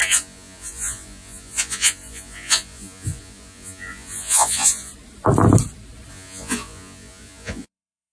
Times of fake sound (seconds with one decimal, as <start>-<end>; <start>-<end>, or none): 0.0-4.9; 6.1-8.1